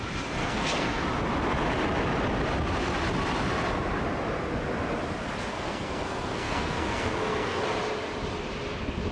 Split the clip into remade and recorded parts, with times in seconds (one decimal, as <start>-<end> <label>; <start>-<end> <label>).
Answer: 0.0-0.4 recorded; 0.4-1.0 remade; 1.0-5.5 recorded; 5.5-7.6 remade; 7.6-9.1 recorded